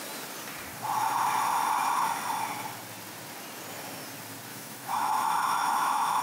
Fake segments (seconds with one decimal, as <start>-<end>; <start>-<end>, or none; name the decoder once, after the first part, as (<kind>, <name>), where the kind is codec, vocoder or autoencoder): 4.5-6.2 (autoencoder, DAC-VAE)